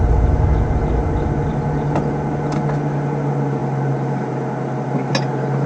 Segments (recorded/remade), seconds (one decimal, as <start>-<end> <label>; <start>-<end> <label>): 0.0-5.7 recorded